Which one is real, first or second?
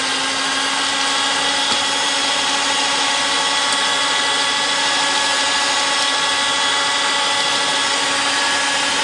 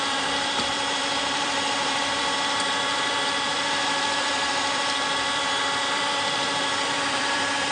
first